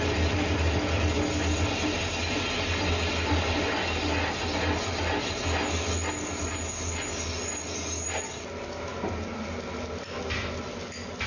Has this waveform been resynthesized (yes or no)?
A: no